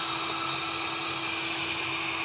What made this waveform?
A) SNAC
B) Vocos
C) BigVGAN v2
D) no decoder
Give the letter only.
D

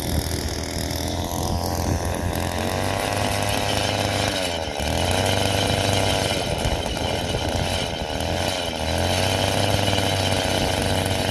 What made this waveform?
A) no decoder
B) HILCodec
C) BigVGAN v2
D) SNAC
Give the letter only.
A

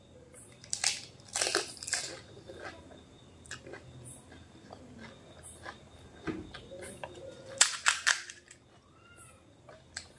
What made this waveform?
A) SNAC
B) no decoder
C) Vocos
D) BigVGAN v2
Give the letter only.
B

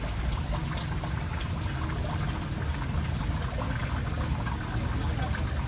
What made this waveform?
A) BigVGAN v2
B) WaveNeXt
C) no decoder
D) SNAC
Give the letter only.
C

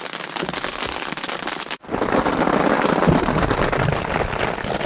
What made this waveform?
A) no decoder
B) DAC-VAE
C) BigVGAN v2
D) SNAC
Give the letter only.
A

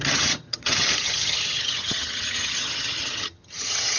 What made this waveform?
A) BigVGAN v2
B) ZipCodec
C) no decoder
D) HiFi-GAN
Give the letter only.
D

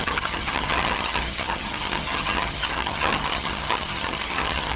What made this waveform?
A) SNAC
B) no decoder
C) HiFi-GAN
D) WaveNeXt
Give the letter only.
C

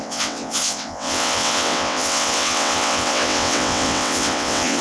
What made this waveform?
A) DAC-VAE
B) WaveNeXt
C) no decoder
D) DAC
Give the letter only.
B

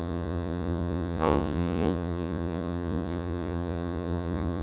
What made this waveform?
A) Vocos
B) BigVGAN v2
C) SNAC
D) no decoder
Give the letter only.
A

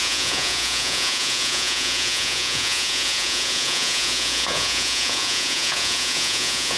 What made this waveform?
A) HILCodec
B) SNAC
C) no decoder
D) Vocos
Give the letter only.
D